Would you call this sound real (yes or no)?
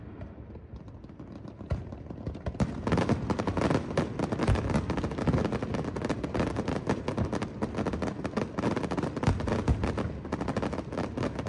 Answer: yes